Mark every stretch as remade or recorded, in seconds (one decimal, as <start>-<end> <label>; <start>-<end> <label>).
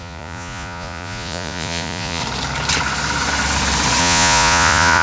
0.0-2.2 remade; 2.2-4.0 recorded; 4.0-5.0 remade